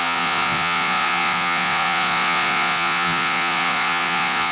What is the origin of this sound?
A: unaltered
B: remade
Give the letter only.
B